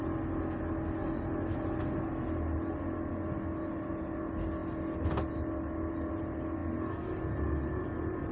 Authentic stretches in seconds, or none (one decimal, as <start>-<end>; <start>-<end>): 0.0-8.3